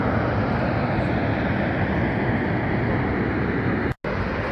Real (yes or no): yes